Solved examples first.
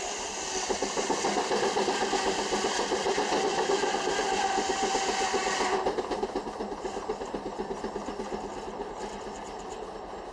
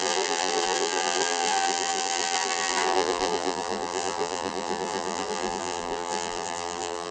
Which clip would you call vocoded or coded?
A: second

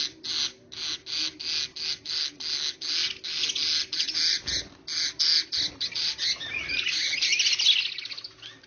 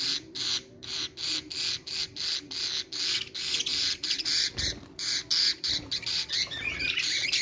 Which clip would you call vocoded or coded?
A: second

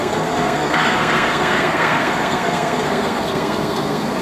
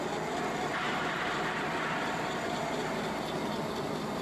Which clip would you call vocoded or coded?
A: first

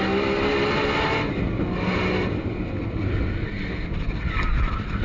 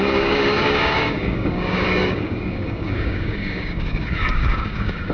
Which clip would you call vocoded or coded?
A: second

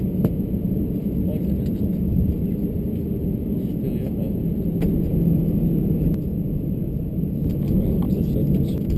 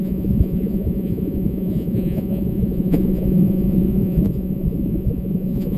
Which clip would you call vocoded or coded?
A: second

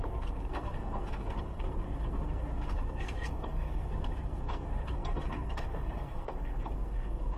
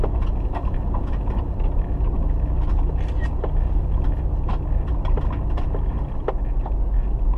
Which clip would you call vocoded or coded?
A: first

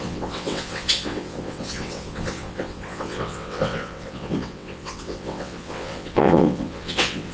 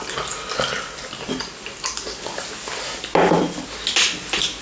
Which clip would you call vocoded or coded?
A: first